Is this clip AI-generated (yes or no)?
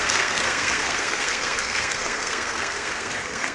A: yes